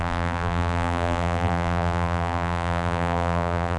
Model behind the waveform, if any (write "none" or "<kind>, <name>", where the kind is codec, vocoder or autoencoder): vocoder, BigVGAN v2